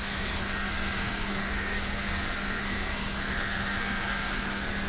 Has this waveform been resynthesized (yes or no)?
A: yes